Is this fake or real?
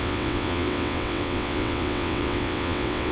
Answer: fake